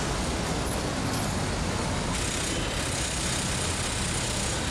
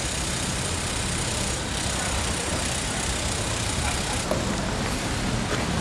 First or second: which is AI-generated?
second